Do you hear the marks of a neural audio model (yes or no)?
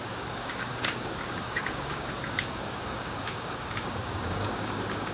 yes